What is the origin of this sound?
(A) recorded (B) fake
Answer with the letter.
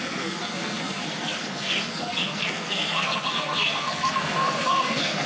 B